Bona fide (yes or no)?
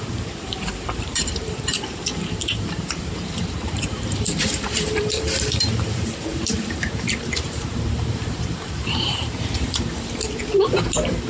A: no